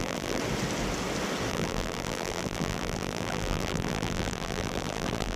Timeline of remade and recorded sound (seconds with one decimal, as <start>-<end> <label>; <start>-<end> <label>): 0.0-0.4 remade; 0.4-1.5 recorded; 1.5-5.4 remade